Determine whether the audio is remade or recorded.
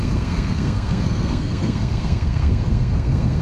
remade